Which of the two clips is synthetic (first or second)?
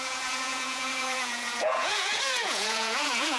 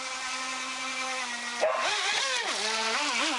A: first